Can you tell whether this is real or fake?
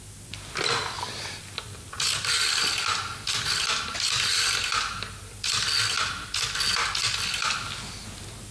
real